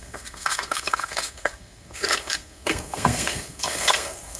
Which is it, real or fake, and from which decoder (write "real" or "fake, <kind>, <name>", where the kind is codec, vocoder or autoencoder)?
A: fake, codec, SNAC